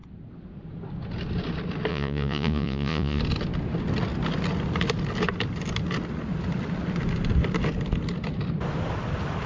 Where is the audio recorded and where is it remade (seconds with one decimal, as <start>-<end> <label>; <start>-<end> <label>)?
0.0-1.9 recorded; 1.9-3.2 remade; 3.2-9.5 recorded